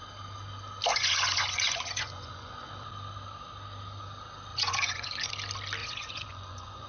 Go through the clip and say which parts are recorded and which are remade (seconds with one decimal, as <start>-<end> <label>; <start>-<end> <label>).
0.0-0.9 recorded; 0.9-2.7 remade; 2.7-4.5 recorded; 4.5-5.3 remade; 5.3-5.8 recorded; 5.8-6.9 remade